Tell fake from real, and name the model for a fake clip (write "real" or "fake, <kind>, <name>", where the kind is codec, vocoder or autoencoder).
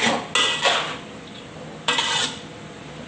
real